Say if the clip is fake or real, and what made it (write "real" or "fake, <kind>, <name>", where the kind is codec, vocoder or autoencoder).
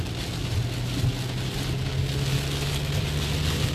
real